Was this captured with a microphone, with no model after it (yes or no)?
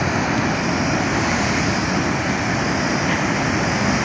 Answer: yes